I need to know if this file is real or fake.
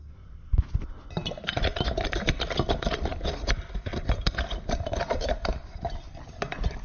real